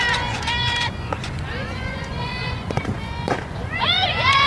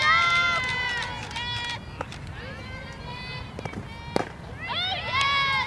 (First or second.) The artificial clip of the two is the first